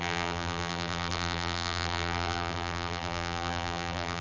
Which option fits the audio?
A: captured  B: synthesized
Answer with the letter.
B